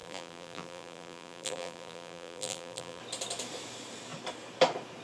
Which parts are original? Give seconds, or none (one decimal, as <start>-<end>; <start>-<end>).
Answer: 3.0-5.0